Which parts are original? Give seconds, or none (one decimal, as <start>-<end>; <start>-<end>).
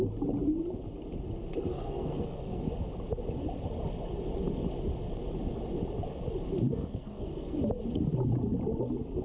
0.0-1.7; 2.6-6.7; 7.6-9.2